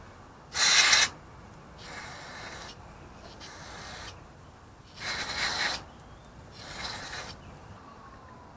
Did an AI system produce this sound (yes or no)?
no